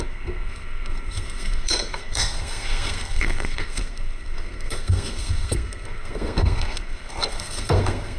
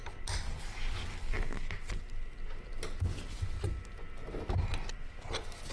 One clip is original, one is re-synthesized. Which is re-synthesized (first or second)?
first